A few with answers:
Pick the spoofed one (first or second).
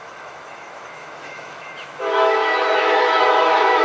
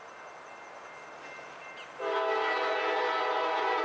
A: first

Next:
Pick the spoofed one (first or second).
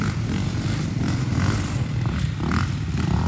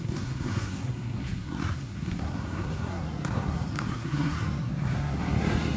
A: second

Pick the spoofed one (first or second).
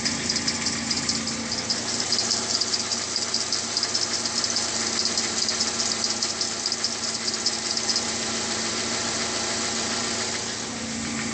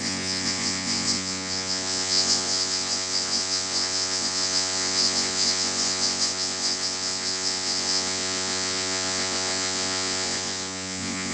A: second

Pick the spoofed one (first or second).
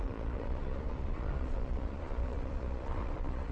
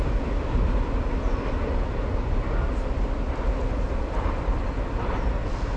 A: first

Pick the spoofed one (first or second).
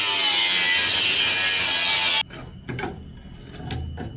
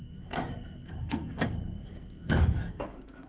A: second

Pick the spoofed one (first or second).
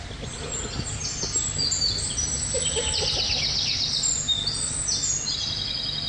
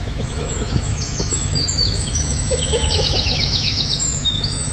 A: second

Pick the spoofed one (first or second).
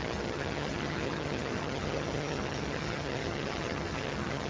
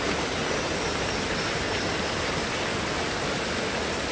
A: first